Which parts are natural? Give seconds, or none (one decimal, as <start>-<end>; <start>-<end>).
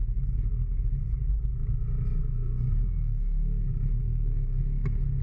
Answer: 0.0-2.2; 3.6-4.0; 4.6-5.2